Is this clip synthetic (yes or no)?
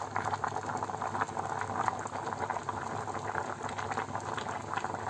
no